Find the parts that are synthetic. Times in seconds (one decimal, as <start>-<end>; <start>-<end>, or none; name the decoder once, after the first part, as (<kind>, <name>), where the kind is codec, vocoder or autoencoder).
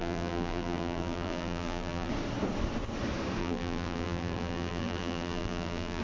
0.0-2.1 (vocoder, BigVGAN v2); 3.4-6.0